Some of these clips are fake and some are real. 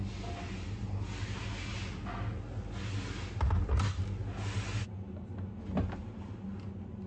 real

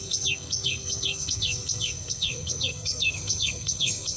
fake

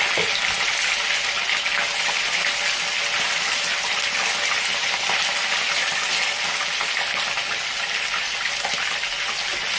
real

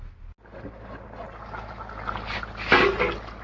real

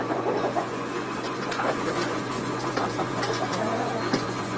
fake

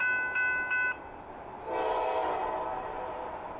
real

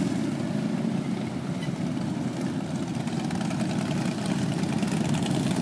real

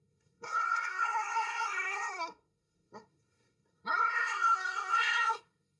fake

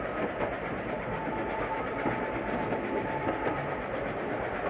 real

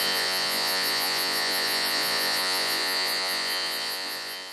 fake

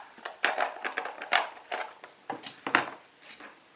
real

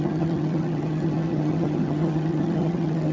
fake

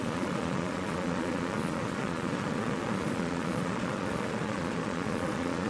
fake